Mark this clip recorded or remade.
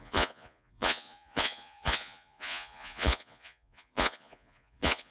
remade